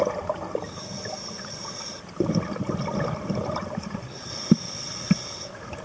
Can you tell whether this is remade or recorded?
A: recorded